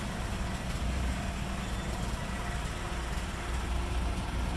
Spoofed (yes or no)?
no